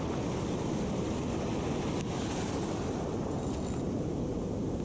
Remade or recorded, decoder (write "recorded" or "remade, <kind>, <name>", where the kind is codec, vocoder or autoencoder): recorded